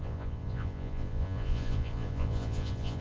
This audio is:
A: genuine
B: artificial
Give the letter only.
B